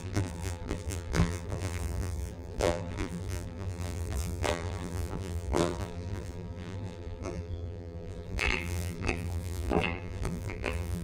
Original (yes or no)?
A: no